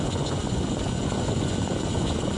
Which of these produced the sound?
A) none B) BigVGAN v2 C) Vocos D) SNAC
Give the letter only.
C